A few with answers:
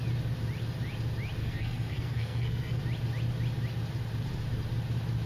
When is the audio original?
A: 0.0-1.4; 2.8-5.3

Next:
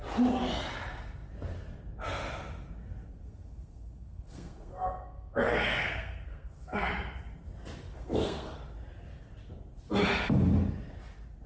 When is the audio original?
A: 0.0-3.1; 6.9-7.9; 8.6-11.5

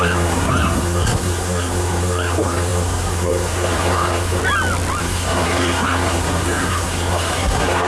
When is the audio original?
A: 4.4-5.0